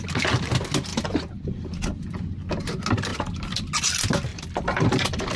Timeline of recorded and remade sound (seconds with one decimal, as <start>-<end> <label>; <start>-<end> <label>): 0.0-0.9 recorded; 0.9-2.2 remade; 2.2-4.3 recorded; 4.3-5.4 remade